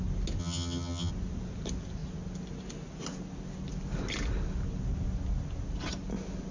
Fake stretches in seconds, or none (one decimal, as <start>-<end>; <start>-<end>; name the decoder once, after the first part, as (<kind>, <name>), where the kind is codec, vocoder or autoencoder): 0.4-1.1 (vocoder, HiFi-GAN)

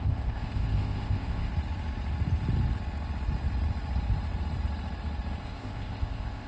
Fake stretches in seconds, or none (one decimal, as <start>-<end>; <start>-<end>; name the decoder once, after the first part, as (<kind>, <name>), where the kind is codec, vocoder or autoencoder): 0.0-1.5 (codec, ZipCodec); 5.4-6.5

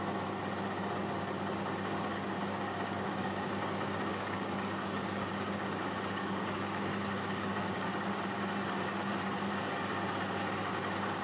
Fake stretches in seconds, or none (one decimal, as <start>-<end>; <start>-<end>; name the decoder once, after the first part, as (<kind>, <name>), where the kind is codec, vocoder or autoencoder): 2.1-3.5 (codec, DAC); 4.1-8.2

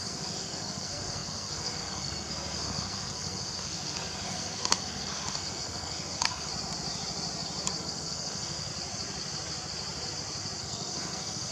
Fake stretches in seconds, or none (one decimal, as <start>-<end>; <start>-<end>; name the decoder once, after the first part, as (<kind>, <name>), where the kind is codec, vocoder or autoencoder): 0.0-6.5 (codec, SNAC); 7.8-8.7; 10.6-11.5

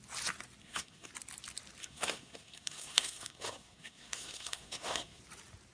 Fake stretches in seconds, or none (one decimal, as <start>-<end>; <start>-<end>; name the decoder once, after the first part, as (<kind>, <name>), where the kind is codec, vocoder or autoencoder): 0.6-1.1 (codec, SNAC); 1.8-5.2